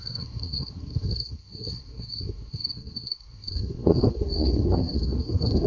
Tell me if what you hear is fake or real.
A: fake